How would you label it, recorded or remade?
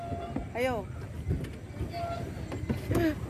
recorded